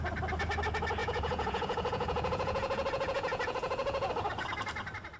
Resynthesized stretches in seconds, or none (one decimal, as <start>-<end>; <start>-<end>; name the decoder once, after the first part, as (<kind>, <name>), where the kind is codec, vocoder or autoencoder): 1.0-4.1 (vocoder, Vocos)

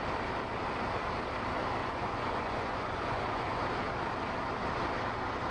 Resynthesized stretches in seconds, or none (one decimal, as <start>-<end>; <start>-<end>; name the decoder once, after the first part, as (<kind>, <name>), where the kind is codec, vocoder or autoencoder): 1.8-3.6 (vocoder, Vocos)

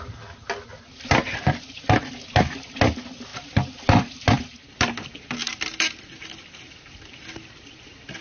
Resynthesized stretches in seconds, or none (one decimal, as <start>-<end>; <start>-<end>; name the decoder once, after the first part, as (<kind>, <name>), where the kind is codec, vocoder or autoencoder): none

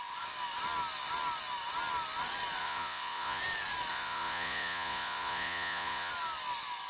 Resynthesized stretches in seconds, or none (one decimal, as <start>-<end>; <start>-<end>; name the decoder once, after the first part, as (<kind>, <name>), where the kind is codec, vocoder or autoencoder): 2.6-3.4 (vocoder, Vocos); 3.9-6.1

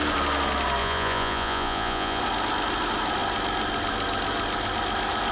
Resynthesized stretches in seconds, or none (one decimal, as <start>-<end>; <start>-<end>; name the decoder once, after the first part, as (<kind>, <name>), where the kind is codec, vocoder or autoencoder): 0.8-2.2 (vocoder, Vocos)

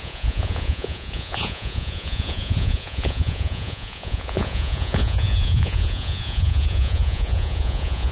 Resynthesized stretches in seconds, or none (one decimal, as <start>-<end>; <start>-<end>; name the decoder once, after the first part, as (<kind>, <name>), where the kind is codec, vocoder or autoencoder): 0.0-8.1 (vocoder, Vocos)